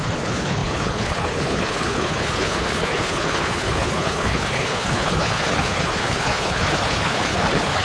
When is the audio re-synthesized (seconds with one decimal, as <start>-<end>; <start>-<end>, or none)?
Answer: 0.0-7.8